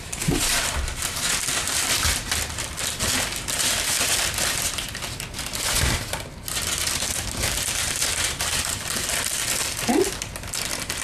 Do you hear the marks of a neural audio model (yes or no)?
no